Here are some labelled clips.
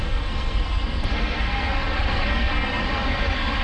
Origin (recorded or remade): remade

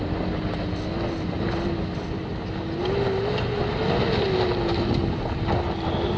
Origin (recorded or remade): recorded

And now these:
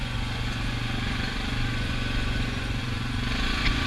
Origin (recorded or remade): remade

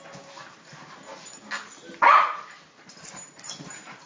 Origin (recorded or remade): recorded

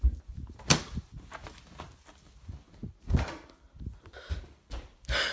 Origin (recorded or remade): recorded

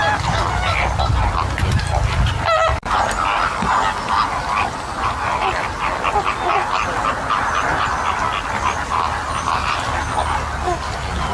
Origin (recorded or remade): recorded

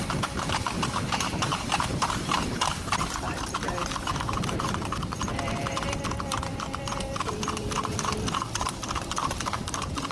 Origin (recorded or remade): remade